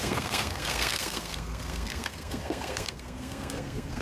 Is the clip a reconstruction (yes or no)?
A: yes